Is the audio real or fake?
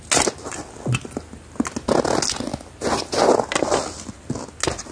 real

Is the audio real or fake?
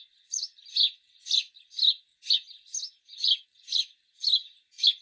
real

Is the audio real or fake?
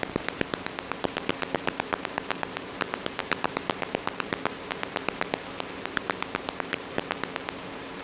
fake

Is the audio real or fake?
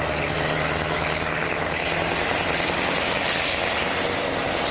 real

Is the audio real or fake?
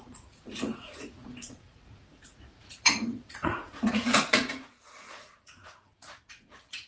fake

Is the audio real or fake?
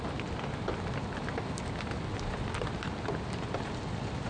real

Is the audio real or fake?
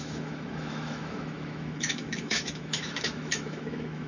fake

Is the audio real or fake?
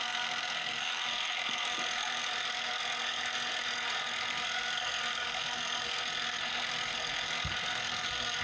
fake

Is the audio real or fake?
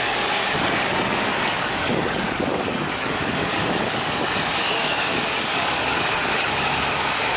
fake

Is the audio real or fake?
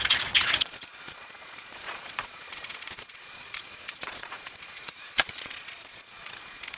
fake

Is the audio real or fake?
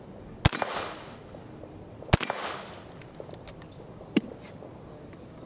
real